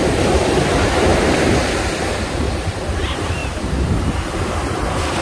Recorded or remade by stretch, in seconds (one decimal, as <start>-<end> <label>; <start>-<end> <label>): 0.0-3.4 remade; 3.4-4.7 recorded; 4.7-5.2 remade